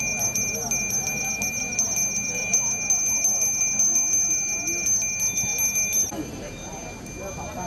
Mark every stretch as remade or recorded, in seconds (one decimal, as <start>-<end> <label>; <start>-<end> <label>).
0.0-7.7 recorded